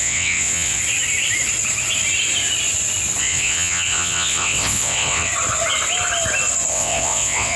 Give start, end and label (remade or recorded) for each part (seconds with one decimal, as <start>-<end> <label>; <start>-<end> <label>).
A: 0.0-0.8 remade; 0.8-3.2 recorded; 3.2-5.3 remade; 5.3-6.7 recorded; 6.7-7.6 remade